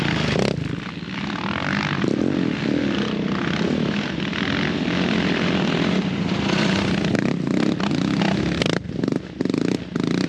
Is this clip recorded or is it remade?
recorded